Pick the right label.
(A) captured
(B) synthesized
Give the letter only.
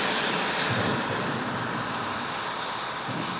A